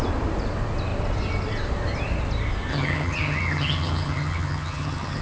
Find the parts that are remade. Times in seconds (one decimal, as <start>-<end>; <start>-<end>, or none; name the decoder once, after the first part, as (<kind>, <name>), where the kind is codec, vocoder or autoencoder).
2.7-5.2 (vocoder, HiFi-GAN)